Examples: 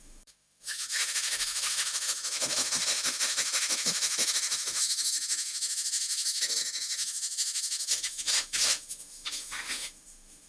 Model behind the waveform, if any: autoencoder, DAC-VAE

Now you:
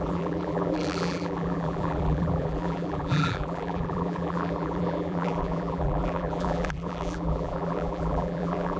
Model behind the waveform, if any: vocoder, BigVGAN v2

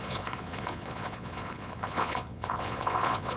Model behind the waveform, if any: vocoder, Vocos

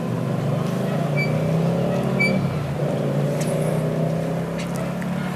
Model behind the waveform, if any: none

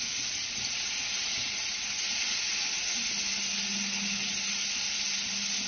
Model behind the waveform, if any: none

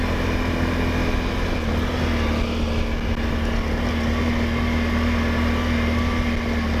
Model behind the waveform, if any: none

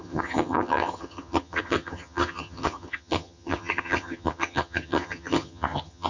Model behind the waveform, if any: vocoder, HiFi-GAN